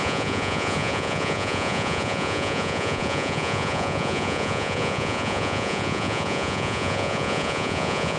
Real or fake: fake